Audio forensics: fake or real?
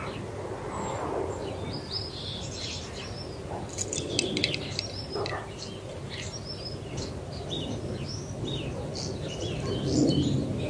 real